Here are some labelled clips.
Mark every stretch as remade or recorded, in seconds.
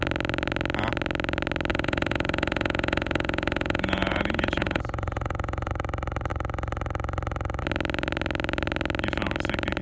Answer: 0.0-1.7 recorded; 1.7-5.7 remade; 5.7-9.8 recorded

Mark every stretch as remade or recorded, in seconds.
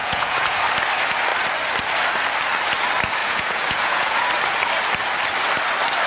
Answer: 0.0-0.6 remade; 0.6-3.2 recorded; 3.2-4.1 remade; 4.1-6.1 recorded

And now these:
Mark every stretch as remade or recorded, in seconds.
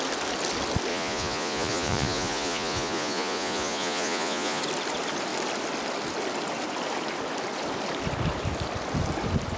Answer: 0.0-0.9 recorded; 0.9-4.6 remade; 4.6-9.6 recorded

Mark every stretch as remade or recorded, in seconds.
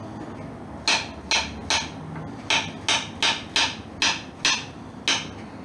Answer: 0.0-5.6 recorded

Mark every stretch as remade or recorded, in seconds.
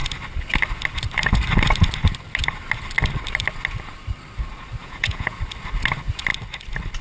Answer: 0.0-4.8 recorded; 4.8-5.4 remade; 5.4-7.0 recorded